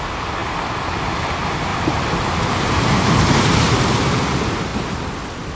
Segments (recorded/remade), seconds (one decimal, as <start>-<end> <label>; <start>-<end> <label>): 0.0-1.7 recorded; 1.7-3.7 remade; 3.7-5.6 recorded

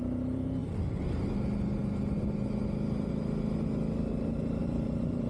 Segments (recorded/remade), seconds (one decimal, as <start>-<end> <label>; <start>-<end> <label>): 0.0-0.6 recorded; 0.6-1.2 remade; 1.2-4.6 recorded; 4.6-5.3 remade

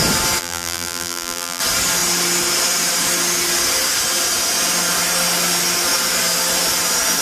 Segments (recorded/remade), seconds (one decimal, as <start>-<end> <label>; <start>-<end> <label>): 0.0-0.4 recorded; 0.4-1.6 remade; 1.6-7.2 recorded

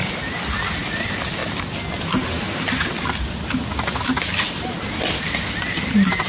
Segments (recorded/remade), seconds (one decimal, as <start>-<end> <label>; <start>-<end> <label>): 0.0-6.3 recorded

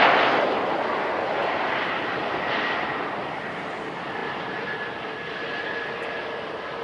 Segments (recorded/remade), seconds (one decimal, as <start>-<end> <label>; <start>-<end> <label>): 0.0-1.4 recorded; 1.4-3.3 remade; 3.3-6.8 recorded